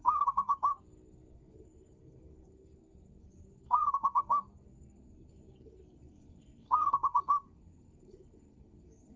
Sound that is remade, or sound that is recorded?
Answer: remade